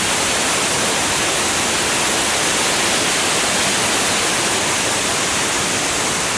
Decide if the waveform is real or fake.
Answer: real